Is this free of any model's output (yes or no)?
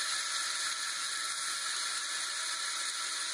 no